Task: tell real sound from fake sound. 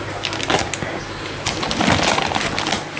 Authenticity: real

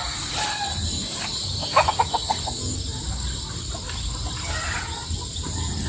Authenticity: real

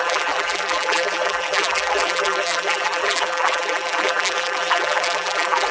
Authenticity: fake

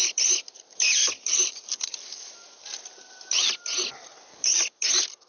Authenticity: real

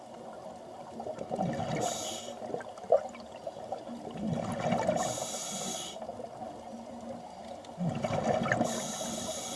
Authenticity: real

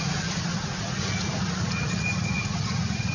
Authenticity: fake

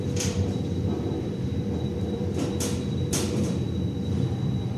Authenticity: fake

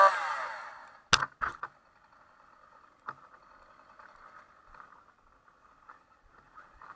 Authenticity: real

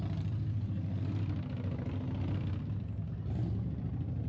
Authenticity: real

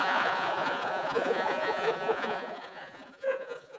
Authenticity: fake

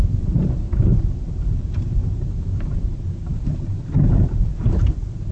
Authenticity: fake